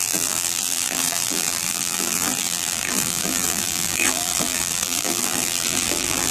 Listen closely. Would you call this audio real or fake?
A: fake